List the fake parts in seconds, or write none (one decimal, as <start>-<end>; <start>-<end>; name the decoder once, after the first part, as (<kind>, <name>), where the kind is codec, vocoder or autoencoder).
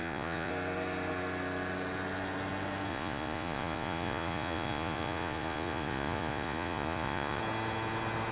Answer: 0.0-0.5 (vocoder, Vocos); 2.9-7.4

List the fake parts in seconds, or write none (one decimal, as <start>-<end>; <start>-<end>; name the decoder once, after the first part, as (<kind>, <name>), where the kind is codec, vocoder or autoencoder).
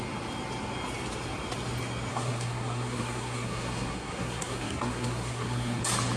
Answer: 2.1-5.8 (codec, SNAC)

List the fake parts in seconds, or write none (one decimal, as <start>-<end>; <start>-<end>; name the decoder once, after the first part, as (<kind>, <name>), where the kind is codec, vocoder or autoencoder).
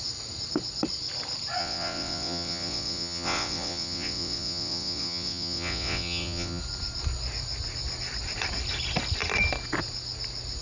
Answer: 1.6-6.6 (vocoder, WaveNeXt)